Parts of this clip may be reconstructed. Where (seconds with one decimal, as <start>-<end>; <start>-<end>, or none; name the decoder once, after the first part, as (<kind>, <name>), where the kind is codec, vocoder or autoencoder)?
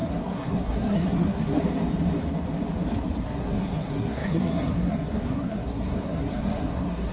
0.0-1.6 (codec, SNAC); 3.2-7.1